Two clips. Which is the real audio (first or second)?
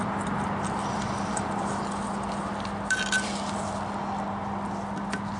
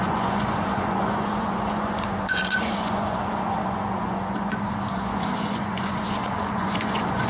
first